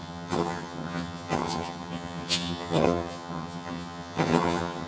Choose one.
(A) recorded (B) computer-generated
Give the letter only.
B